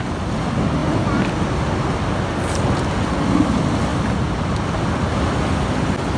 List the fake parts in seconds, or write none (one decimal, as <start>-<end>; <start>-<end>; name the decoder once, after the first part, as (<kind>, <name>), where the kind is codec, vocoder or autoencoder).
none